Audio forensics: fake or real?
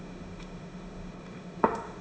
fake